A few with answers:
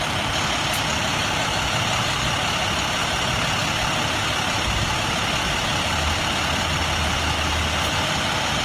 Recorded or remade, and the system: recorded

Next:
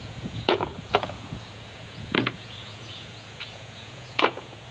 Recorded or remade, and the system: remade, vocoder, Vocos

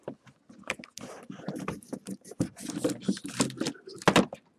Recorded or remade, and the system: recorded